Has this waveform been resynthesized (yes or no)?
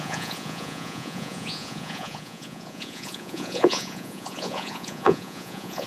yes